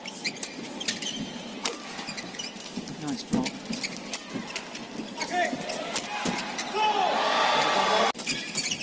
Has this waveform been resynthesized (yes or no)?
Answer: no